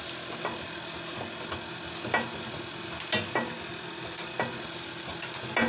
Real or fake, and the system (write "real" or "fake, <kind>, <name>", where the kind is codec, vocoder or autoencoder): real